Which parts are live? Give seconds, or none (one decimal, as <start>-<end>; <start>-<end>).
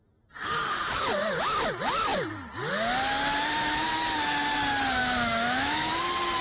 0.0-5.0; 5.9-6.4